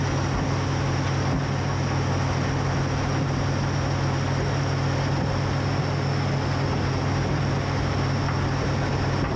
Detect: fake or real real